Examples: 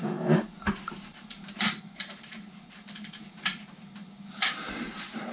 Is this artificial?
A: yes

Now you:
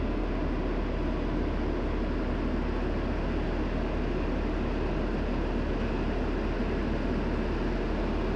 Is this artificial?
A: no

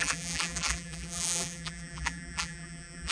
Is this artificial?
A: yes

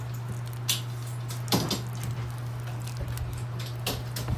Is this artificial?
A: no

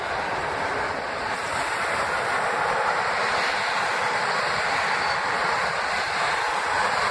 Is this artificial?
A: no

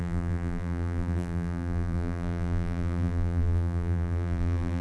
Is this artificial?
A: yes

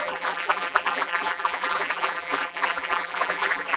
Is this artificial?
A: yes